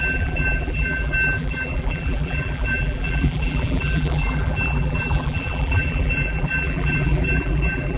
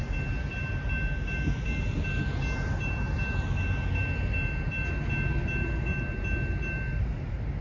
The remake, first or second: first